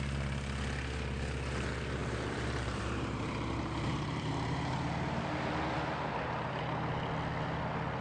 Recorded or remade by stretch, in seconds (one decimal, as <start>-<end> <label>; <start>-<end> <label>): 0.0-2.0 recorded; 2.0-6.6 remade; 6.6-8.0 recorded